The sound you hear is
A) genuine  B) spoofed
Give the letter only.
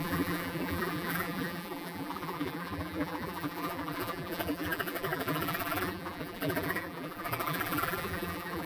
B